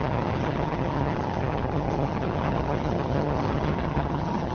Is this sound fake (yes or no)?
yes